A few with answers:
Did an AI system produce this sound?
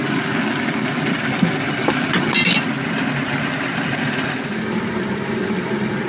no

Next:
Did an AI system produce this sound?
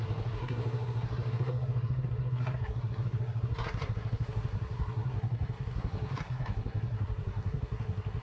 yes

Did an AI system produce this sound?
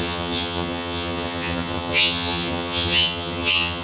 yes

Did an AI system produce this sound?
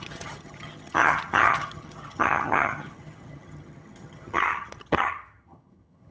yes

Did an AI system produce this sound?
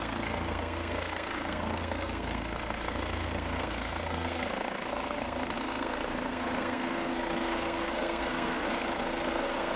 yes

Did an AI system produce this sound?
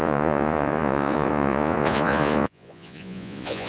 yes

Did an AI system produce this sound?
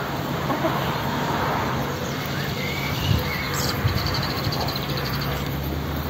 yes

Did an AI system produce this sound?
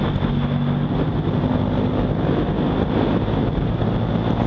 no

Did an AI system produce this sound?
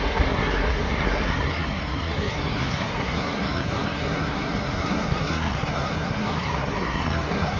yes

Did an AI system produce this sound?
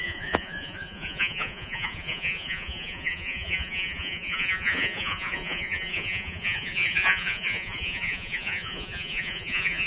yes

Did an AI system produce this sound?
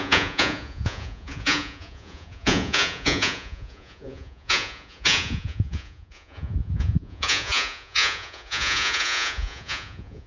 yes